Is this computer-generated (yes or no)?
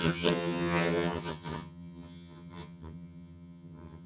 yes